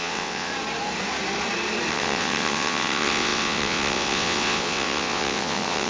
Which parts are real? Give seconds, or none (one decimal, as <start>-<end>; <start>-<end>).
0.5-1.9